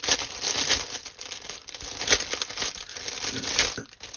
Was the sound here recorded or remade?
recorded